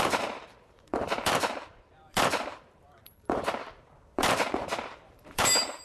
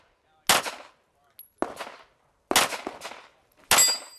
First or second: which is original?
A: second